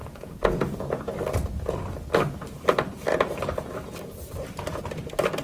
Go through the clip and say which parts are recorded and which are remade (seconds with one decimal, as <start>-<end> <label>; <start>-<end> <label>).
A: 0.0-1.0 remade; 1.0-5.4 recorded